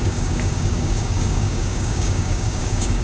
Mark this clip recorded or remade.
remade